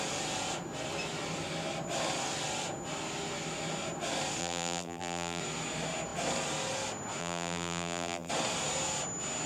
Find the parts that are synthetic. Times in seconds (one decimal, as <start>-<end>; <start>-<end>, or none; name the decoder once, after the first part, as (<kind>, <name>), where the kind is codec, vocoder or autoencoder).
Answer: 4.4-5.4 (vocoder, BigVGAN v2); 7.2-8.3

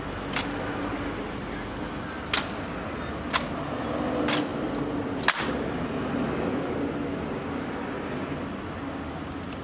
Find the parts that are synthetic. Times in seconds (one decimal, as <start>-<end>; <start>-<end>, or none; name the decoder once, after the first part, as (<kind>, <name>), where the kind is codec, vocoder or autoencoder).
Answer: 4.5-5.4 (vocoder, BigVGAN v2)